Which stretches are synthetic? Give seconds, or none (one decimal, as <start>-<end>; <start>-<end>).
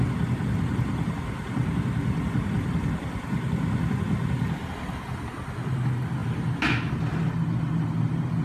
none